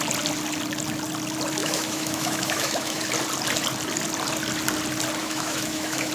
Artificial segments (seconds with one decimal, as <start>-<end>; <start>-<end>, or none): 1.6-3.0; 5.2-6.1